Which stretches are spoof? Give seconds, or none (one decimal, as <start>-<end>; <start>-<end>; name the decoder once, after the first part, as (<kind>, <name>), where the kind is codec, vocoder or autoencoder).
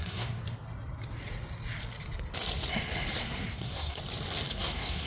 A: 0.0-0.4 (codec, SNAC); 3.2-4.0; 4.5-5.1